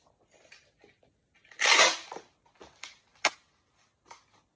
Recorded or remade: recorded